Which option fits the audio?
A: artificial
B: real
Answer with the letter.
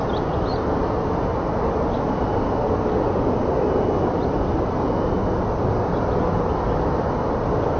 B